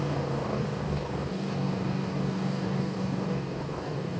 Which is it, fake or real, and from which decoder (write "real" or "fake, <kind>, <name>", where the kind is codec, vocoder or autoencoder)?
fake, codec, DAC